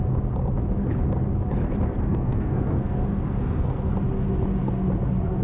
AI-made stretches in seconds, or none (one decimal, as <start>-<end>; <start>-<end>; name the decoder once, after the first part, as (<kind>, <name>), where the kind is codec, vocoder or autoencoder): 2.1-3.9 (codec, SNAC)